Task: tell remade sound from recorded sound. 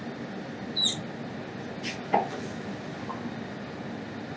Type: recorded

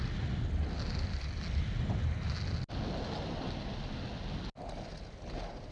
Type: recorded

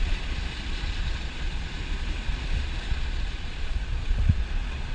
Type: remade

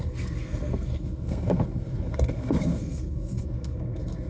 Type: remade